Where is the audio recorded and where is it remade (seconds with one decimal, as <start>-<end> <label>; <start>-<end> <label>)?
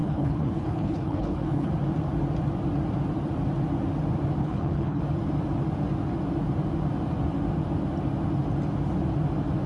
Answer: 0.0-1.7 remade; 1.7-4.4 recorded; 4.4-5.0 remade; 5.0-9.7 recorded